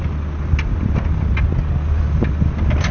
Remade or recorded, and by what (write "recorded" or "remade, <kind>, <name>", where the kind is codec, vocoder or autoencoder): recorded